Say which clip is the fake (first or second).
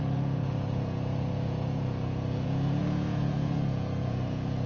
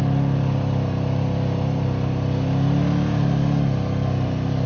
first